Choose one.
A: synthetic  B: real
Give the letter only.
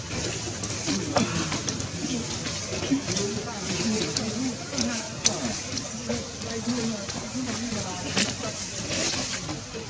B